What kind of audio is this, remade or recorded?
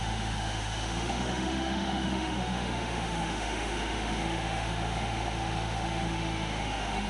remade